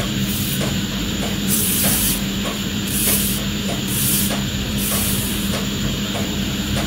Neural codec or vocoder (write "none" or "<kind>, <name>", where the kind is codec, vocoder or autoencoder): vocoder, BigVGAN v2